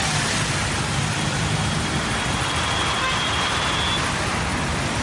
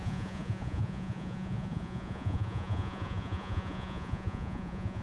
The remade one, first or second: second